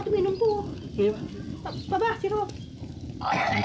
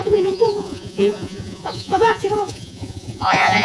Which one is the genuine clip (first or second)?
first